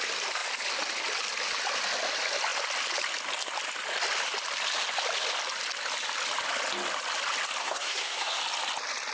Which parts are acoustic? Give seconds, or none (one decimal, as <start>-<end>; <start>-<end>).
0.0-7.6; 8.4-9.1